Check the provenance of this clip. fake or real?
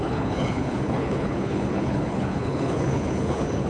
fake